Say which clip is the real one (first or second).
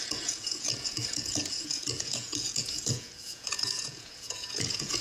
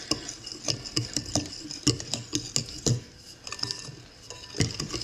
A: second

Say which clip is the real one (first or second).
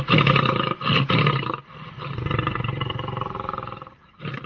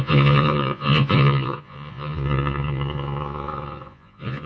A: first